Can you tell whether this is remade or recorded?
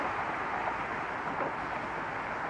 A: recorded